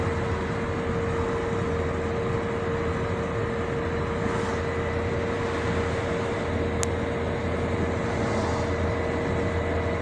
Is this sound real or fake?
real